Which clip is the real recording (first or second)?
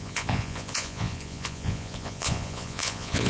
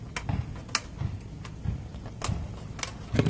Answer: second